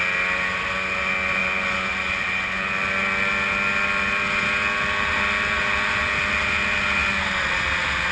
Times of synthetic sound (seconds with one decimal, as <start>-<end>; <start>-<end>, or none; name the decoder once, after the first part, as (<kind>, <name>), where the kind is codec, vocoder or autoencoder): none